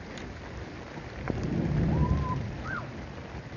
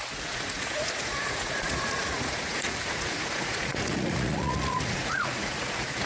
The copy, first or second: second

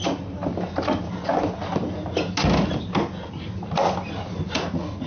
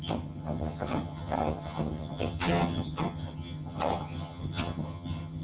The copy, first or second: second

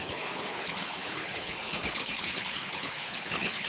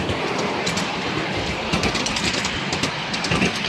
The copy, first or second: first